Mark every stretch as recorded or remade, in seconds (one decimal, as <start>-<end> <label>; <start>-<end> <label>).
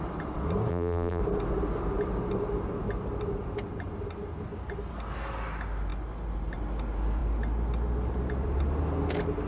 0.0-0.7 recorded; 0.7-1.2 remade; 1.2-9.5 recorded